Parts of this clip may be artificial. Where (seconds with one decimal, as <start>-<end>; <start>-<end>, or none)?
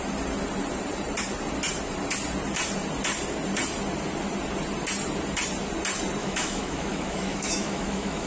6.2-8.3